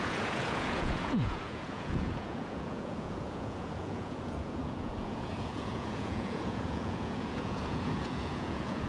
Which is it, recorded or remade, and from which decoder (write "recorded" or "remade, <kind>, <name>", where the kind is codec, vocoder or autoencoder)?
remade, vocoder, Vocos